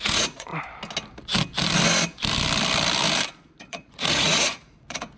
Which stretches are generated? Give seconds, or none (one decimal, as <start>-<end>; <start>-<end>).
0.0-0.5; 3.6-5.2